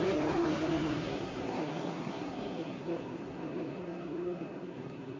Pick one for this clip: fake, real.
fake